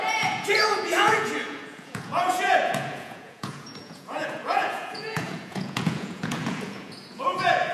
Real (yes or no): no